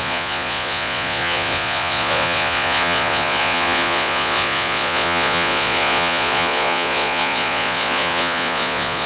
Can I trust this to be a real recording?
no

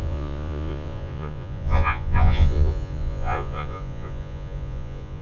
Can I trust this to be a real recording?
no